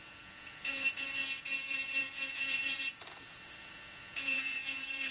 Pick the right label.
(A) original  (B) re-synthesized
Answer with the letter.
B